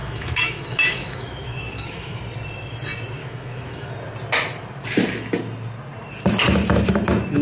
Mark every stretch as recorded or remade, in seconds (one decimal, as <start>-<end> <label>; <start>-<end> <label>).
0.0-2.2 remade; 2.2-3.2 recorded; 3.2-3.9 remade; 3.9-7.4 recorded